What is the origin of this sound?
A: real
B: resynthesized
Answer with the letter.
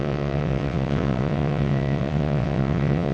B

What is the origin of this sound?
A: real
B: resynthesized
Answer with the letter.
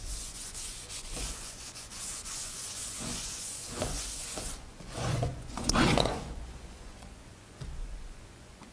B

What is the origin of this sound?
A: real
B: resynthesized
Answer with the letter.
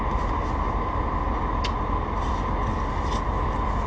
A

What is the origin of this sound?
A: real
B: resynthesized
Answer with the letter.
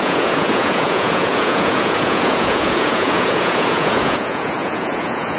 B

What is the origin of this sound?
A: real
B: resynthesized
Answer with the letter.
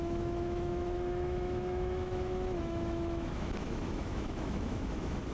B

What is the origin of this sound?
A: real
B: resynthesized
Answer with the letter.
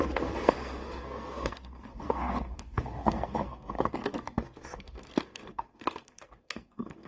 B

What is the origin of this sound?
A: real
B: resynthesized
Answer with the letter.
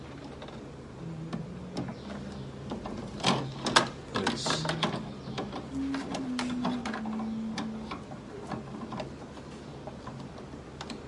A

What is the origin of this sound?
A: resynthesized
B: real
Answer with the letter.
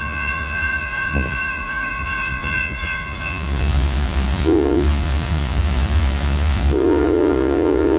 A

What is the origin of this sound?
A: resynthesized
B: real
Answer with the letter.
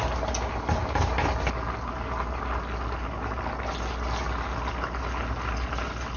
B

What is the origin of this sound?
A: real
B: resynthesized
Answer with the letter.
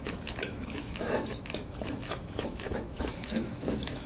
B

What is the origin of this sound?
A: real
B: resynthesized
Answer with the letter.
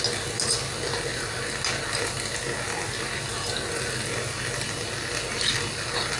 A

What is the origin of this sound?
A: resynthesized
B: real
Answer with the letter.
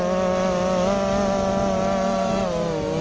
B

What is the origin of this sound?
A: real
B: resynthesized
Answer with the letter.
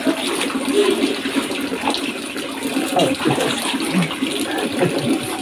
A